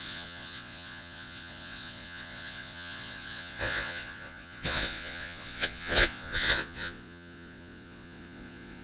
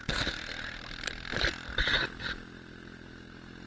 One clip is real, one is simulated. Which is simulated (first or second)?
first